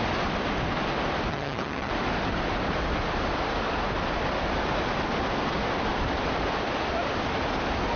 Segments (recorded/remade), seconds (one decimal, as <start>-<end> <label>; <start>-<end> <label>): 0.0-1.3 recorded; 1.3-1.9 remade; 1.9-8.0 recorded